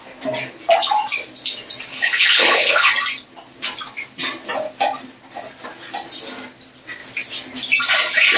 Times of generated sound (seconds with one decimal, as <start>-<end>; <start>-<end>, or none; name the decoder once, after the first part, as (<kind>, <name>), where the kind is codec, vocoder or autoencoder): 1.9-2.9 (codec, HILCodec)